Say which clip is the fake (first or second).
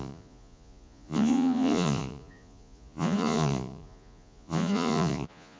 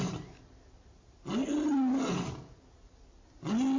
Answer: first